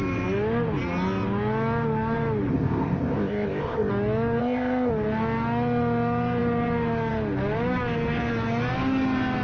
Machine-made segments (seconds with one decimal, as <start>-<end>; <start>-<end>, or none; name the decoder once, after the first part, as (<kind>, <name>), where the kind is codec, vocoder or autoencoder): 2.5-3.9 (codec, ZipCodec); 4.4-4.9